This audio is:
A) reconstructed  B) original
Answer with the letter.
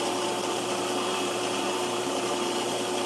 A